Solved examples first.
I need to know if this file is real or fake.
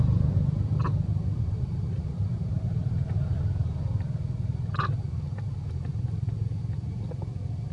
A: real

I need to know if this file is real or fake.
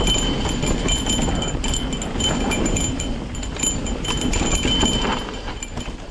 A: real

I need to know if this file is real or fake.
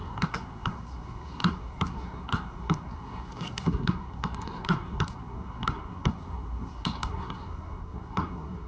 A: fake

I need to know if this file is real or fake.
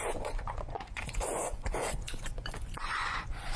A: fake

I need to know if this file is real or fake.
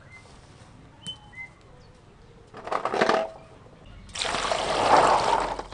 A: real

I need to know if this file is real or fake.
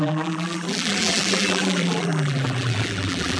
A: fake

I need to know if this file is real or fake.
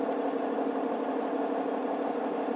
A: real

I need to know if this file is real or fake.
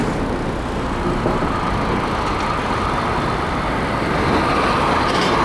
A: real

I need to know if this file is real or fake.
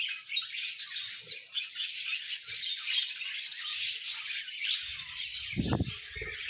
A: real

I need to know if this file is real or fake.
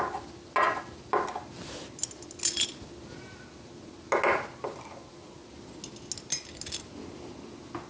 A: real